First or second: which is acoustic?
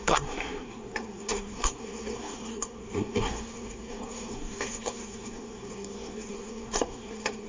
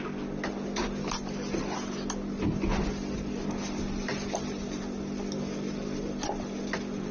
second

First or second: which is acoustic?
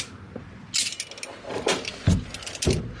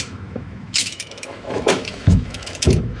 first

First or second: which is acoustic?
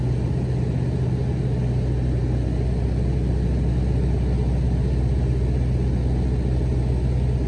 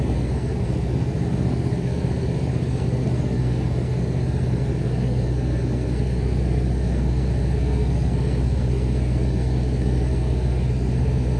first